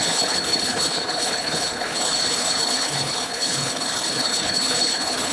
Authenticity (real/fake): fake